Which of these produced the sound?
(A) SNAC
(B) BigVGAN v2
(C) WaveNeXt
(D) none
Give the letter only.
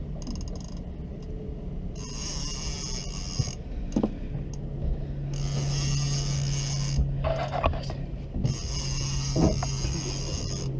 D